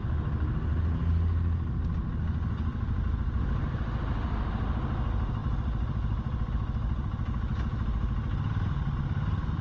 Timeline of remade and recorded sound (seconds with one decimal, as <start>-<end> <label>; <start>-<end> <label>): 0.0-9.6 recorded

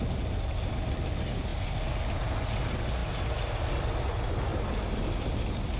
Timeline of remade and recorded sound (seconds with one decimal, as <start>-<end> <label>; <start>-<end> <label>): 0.0-3.0 recorded; 3.0-3.9 remade; 3.9-4.5 recorded; 4.5-5.8 remade

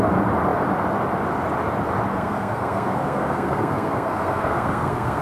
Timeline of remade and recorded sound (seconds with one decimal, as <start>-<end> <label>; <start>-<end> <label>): 0.0-2.1 recorded; 2.1-5.2 remade

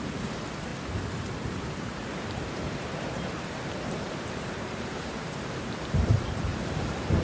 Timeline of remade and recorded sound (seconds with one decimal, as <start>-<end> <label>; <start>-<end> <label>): 0.0-0.7 remade; 0.7-1.3 recorded; 1.3-7.2 remade

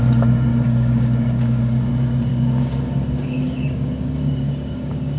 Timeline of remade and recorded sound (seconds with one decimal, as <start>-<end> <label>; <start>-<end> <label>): 0.0-0.5 recorded; 0.5-1.9 remade; 1.9-2.3 recorded; 2.3-5.2 remade